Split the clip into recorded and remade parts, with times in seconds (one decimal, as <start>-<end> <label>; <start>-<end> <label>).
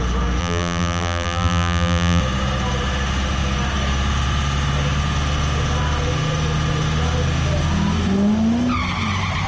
0.0-0.4 recorded; 0.4-2.2 remade; 2.2-9.5 recorded